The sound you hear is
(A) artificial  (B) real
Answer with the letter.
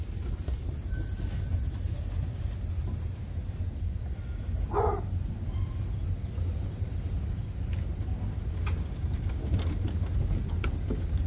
B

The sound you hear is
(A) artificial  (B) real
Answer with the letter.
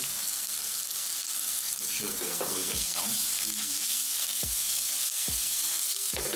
A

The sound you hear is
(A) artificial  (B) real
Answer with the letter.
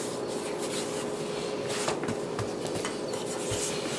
B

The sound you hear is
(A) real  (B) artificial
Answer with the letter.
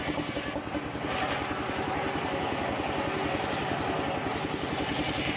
A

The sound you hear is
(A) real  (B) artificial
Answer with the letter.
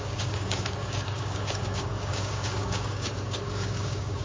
B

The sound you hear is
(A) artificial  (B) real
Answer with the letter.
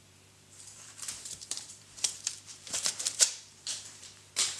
A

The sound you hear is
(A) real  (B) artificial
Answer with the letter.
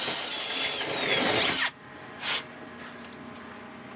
A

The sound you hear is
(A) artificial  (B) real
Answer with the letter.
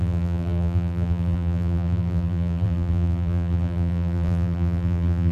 A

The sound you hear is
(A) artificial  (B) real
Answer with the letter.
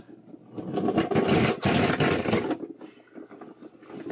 B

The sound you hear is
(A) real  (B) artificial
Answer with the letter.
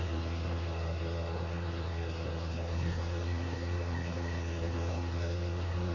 B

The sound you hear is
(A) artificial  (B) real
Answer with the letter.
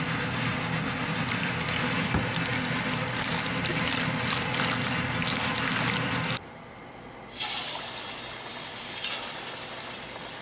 B